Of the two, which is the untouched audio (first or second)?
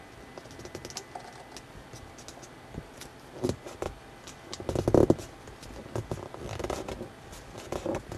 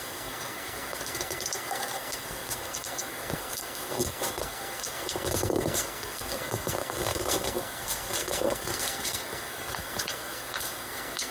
first